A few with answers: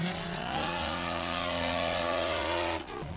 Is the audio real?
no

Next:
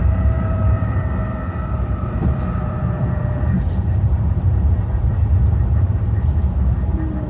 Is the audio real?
no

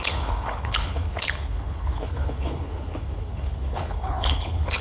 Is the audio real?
no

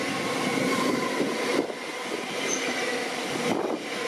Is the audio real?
yes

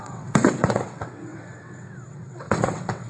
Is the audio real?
no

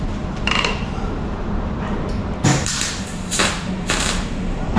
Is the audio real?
no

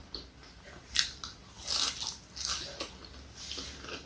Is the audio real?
yes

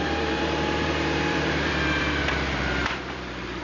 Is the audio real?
no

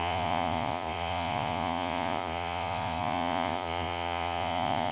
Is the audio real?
no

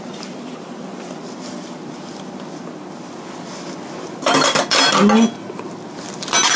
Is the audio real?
yes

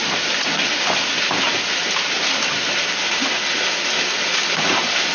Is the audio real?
yes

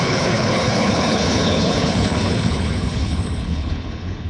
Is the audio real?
no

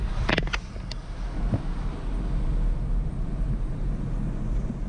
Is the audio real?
yes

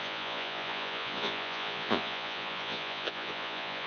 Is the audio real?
no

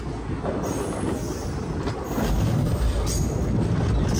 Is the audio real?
yes